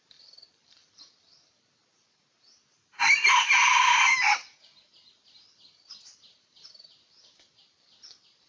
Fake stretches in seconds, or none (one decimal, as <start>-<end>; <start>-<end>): none